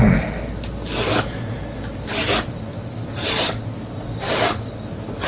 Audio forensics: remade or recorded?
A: recorded